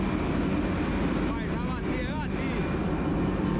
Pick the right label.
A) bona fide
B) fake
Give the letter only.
A